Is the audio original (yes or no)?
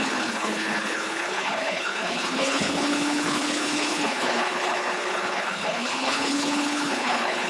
no